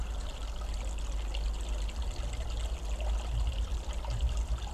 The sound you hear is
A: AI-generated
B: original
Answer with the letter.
B